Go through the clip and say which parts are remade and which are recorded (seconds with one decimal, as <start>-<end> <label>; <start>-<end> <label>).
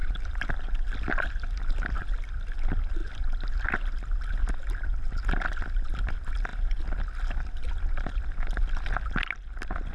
0.0-0.9 remade; 0.9-9.9 recorded